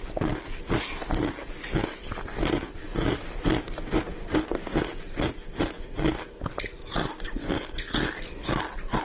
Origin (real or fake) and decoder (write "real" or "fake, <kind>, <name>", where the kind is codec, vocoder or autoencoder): real